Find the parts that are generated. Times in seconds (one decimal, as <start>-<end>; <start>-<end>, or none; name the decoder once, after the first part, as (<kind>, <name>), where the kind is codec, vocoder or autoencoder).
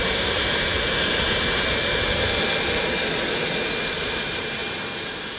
0.0-0.7 (vocoder, BigVGAN v2); 3.9-4.6